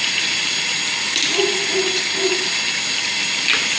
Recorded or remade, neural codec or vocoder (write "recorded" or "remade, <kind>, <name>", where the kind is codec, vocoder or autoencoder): recorded